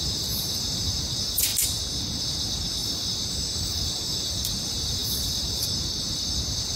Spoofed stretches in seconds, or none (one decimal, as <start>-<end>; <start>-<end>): 0.0-1.5; 2.2-6.8